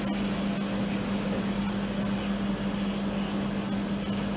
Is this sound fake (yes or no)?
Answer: no